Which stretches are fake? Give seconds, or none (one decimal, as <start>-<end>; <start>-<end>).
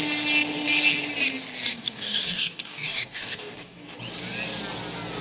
1.7-4.0